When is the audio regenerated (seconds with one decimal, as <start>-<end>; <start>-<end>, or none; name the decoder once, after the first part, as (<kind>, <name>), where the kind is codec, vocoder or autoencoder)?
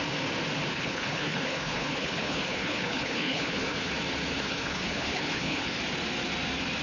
0.7-3.9 (codec, HILCodec); 4.3-5.8